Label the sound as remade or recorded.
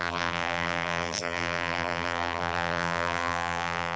remade